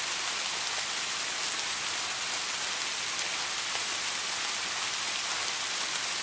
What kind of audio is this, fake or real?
real